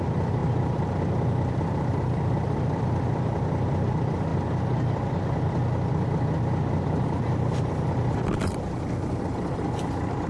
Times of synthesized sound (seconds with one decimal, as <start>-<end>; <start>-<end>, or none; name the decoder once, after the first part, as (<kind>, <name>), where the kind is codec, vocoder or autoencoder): 0.0-4.3 (vocoder, BigVGAN v2); 9.2-10.3